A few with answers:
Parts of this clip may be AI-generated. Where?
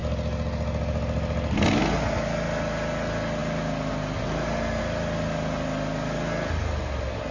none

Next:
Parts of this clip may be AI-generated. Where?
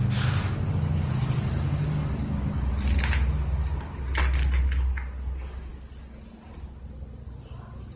none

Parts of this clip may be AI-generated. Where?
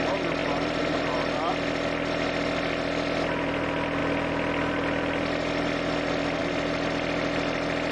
0.4-1.5 (vocoder, BigVGAN v2)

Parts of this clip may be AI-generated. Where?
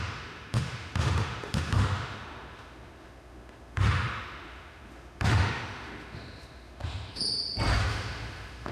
0.0-7.2 (autoencoder, DAC-VAE); 7.8-8.7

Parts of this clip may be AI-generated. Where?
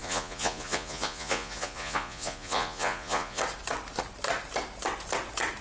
0.0-3.4 (vocoder, Vocos)